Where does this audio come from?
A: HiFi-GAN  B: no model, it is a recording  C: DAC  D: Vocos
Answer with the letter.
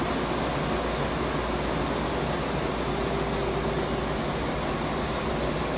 B